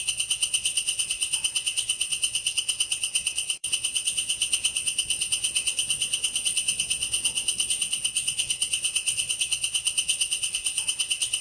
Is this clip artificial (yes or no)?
yes